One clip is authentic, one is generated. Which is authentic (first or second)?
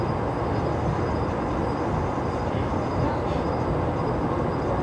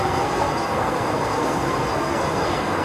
first